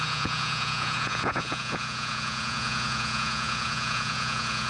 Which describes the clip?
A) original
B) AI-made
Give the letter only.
B